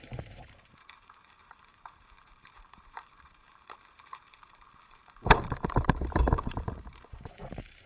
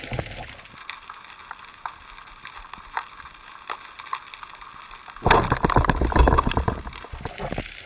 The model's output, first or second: first